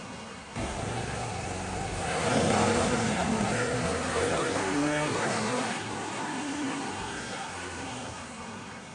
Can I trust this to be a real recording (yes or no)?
no